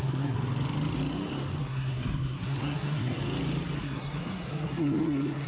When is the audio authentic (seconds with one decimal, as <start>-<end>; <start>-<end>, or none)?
0.4-1.6; 3.2-3.8